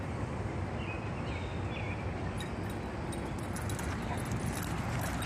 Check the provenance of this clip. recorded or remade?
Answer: recorded